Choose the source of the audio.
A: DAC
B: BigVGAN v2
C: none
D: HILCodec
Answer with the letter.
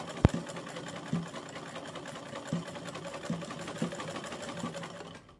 C